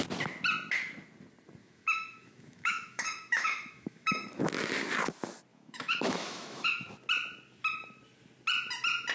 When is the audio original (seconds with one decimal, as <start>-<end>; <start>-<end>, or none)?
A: 0.0-1.6; 4.4-5.5; 6.9-9.1